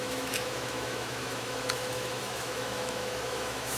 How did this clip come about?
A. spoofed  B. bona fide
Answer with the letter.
A